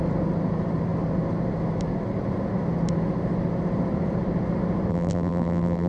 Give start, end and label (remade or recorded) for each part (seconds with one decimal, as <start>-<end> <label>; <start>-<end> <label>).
0.0-4.9 recorded; 4.9-5.9 remade